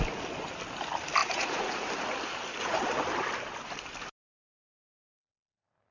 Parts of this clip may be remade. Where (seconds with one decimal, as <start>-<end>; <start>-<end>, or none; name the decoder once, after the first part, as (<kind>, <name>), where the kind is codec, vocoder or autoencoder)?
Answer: 1.2-1.9 (vocoder, Vocos)